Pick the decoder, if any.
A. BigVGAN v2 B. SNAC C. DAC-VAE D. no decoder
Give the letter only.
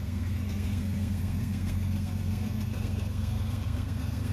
B